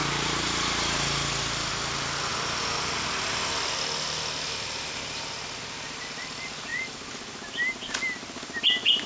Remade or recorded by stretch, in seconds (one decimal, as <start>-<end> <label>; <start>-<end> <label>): 0.0-9.1 recorded